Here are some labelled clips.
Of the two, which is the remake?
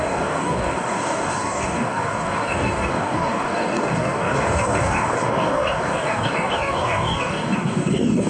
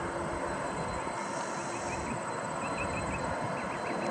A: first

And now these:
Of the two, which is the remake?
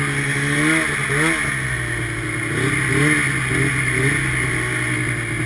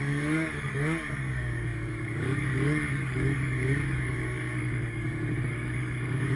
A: second